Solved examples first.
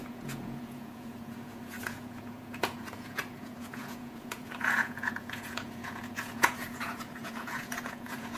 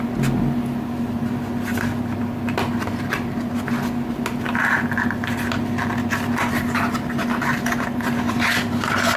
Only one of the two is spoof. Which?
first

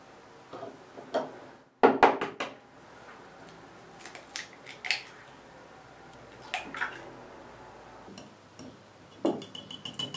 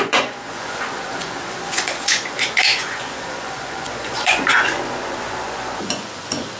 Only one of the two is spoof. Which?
second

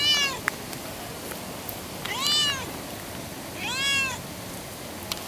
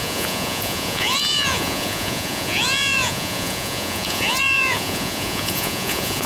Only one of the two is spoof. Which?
second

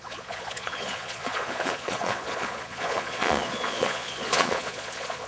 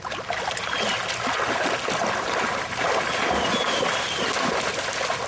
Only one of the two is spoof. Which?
first